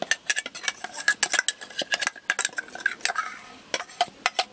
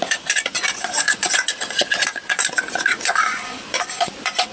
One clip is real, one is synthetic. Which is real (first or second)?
first